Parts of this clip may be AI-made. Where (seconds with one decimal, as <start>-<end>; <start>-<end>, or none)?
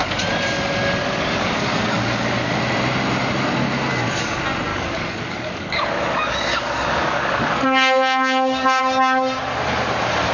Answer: 1.0-2.6; 4.7-8.8